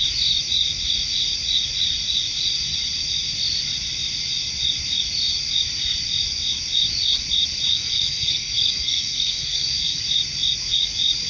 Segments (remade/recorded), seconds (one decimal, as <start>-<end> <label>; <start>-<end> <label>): 0.0-7.7 recorded; 7.7-10.0 remade; 10.0-11.3 recorded